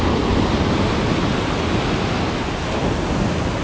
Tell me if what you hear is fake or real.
real